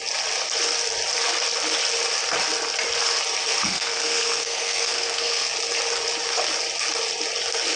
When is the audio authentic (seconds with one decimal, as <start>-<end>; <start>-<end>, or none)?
0.0-3.4; 5.5-7.8